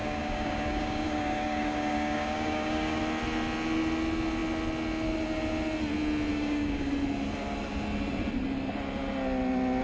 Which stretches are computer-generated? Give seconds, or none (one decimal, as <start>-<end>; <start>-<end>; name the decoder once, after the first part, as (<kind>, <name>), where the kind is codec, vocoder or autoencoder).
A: 0.0-3.0 (codec, DAC); 6.3-6.9